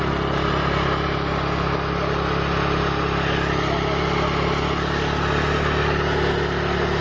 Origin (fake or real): real